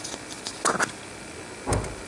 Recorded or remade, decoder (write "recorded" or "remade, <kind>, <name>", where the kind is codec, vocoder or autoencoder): recorded